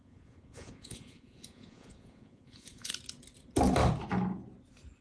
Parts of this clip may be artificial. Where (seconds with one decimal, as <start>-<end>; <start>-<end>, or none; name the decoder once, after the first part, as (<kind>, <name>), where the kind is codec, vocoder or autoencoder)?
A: 0.0-2.9 (vocoder, Vocos)